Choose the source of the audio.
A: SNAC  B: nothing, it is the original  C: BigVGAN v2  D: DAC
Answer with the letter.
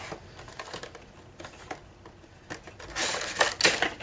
B